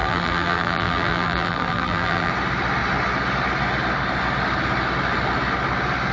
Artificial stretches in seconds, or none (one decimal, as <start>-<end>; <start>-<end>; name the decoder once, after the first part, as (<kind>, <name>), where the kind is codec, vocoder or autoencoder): 0.0-2.3 (vocoder, BigVGAN v2)